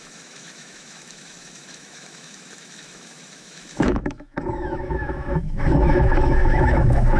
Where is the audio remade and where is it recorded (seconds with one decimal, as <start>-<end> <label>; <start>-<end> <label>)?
0.0-7.2 remade